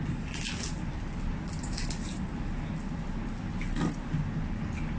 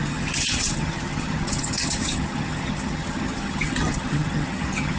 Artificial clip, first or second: second